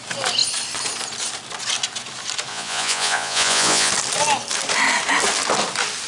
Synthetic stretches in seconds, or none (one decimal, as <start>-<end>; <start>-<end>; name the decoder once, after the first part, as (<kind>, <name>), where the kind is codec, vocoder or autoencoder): 2.5-3.9 (vocoder, Vocos)